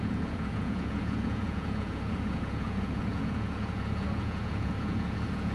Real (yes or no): no